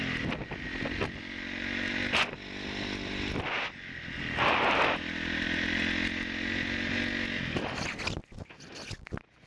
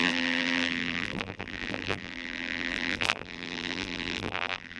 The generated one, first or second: second